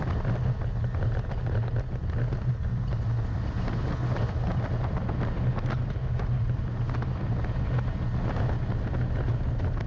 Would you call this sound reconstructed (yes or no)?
no